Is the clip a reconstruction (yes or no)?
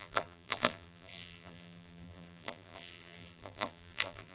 yes